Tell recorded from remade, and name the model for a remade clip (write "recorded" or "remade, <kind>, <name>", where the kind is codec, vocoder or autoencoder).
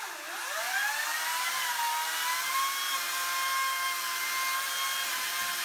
recorded